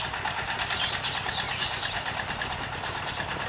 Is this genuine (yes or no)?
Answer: yes